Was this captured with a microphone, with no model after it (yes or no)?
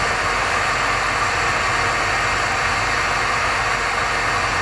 yes